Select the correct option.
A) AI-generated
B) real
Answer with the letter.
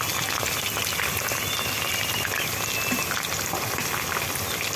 B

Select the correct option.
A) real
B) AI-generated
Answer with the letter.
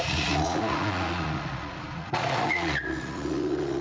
B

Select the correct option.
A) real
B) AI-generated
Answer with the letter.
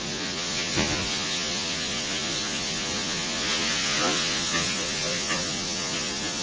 B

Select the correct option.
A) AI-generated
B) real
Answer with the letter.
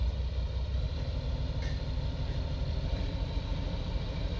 A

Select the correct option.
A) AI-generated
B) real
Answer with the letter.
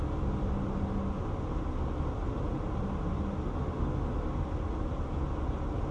B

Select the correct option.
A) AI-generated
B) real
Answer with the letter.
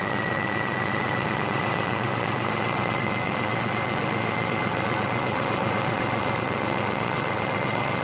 A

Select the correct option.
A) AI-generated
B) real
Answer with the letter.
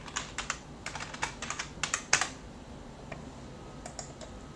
B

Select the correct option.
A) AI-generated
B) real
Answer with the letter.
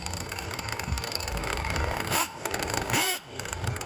A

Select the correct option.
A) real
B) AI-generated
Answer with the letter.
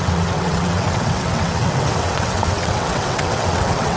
B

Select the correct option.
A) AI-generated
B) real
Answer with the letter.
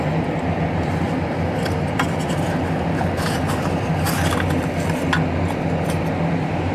B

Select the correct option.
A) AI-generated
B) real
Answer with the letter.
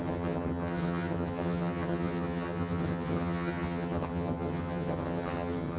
A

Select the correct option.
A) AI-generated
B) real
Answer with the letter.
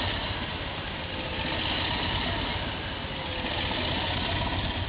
B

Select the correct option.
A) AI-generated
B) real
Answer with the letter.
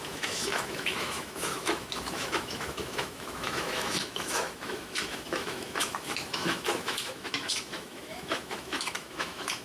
A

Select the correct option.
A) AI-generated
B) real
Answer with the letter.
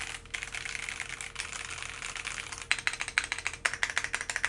B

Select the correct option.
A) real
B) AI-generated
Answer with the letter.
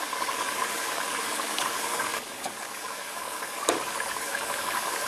B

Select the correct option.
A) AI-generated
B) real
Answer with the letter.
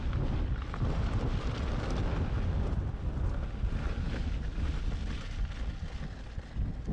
B